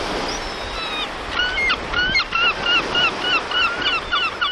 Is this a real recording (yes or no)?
yes